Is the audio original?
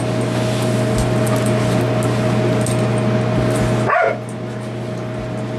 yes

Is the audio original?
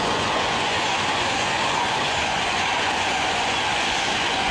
no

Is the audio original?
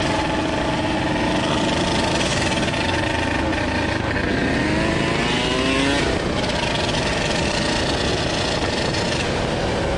yes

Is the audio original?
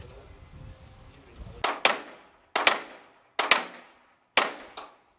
yes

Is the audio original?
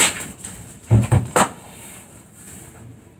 no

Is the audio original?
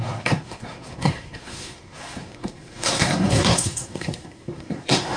no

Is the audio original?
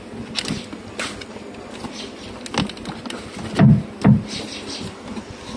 yes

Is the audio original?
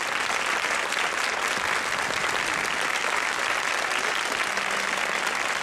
yes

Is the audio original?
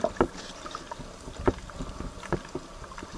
yes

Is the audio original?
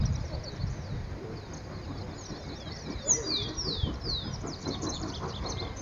yes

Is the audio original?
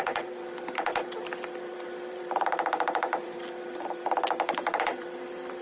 no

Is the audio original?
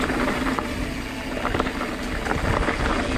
yes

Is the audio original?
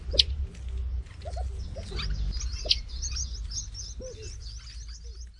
yes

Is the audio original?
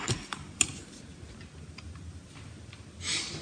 yes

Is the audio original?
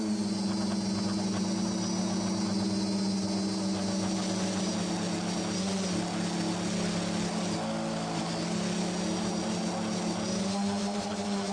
yes